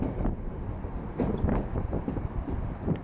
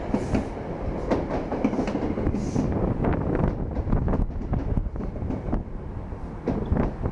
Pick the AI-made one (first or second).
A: first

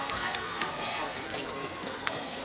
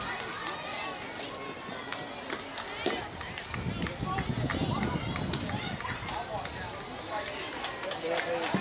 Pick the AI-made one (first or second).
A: first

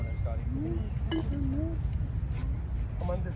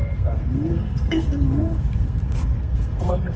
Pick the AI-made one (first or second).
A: second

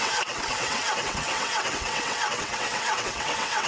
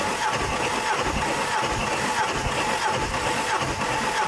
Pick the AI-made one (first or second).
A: first